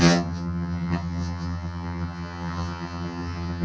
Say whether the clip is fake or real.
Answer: fake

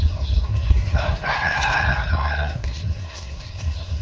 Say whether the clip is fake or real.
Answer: fake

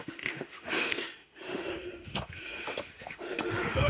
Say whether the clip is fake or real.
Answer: fake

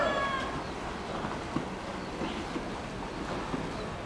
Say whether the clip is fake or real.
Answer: real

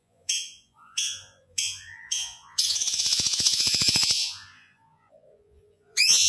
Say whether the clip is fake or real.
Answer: fake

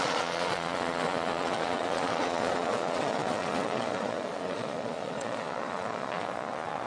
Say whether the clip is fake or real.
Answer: fake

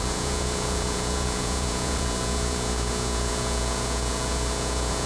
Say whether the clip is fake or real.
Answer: fake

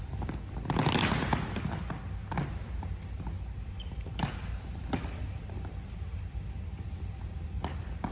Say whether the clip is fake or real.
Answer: real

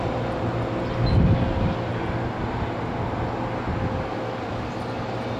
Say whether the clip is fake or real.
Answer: real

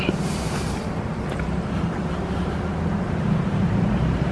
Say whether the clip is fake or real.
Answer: real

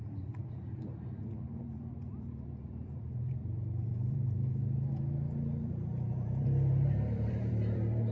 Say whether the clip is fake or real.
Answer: fake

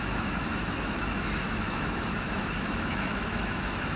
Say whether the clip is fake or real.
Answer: fake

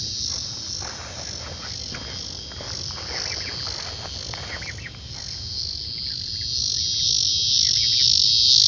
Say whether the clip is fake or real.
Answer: real